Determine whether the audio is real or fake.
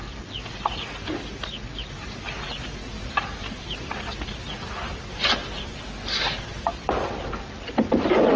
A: fake